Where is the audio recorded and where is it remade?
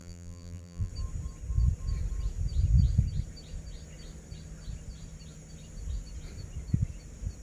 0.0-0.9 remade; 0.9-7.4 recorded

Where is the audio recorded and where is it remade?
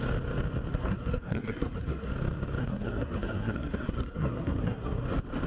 0.0-0.7 recorded; 0.7-2.1 remade; 2.1-2.6 recorded; 2.6-5.0 remade; 5.0-5.5 recorded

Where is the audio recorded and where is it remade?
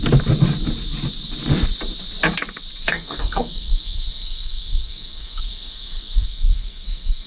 0.0-2.8 recorded; 2.8-7.3 remade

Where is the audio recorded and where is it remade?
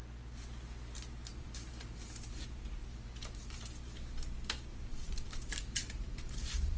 0.0-1.3 recorded; 1.3-2.4 remade; 2.4-2.8 recorded; 2.8-3.6 remade; 3.6-4.7 recorded; 4.7-6.8 remade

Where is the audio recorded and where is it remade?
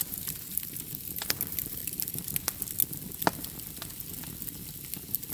0.0-1.8 remade; 1.8-5.3 recorded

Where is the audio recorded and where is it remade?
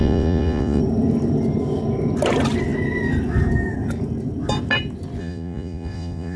0.0-0.8 remade; 0.8-5.2 recorded; 5.2-6.4 remade